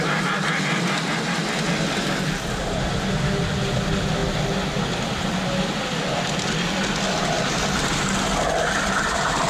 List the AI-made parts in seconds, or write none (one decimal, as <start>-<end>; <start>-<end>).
none